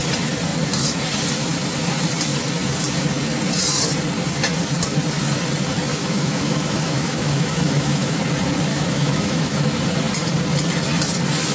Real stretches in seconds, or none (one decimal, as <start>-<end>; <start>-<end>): 0.0-5.9; 8.2-8.7; 9.8-11.5